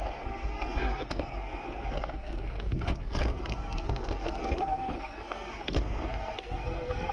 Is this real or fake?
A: fake